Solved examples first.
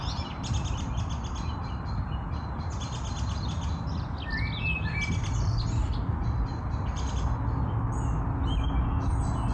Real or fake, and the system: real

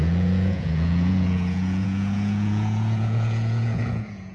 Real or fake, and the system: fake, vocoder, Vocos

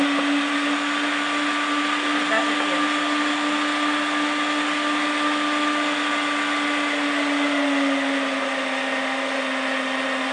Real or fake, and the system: real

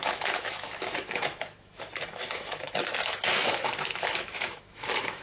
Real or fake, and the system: fake, autoencoder, DAC-VAE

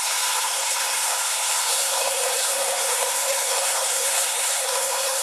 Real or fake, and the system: fake, codec, SNAC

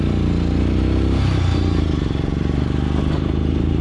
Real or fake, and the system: fake, vocoder, BigVGAN v2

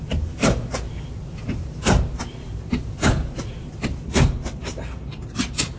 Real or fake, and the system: fake, vocoder, BigVGAN v2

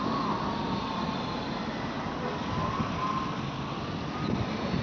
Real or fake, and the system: real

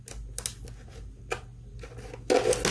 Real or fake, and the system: real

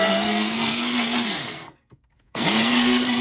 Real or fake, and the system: fake, codec, SNAC